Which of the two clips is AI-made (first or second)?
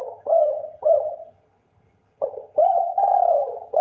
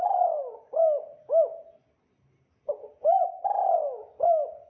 first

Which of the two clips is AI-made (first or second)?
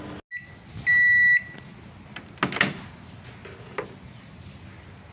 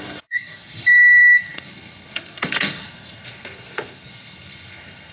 second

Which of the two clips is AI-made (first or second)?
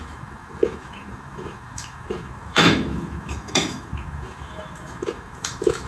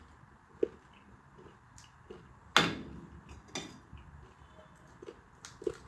first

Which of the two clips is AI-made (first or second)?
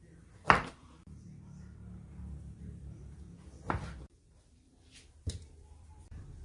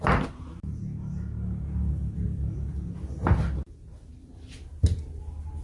first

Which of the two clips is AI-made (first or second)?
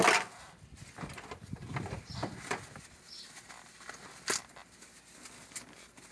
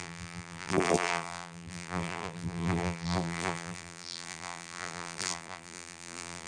second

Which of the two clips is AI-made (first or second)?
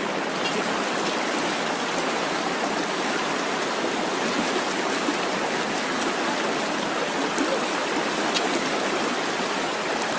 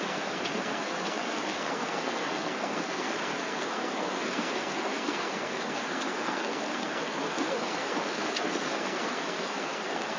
second